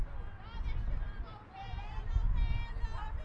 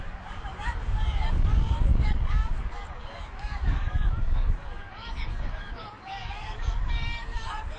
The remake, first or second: second